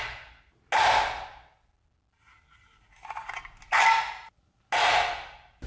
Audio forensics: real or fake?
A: real